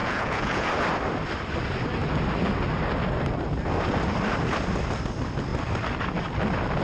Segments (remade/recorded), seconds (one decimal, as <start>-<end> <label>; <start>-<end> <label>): 0.0-0.7 remade; 0.7-6.8 recorded